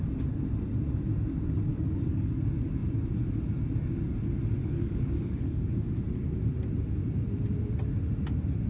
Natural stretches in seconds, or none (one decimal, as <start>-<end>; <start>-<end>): 0.0-1.7; 2.4-4.6; 6.0-8.7